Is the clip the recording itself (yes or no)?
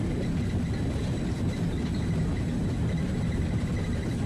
yes